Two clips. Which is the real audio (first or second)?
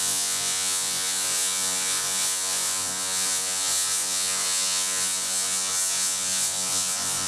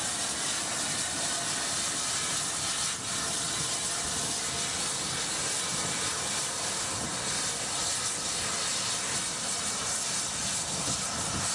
second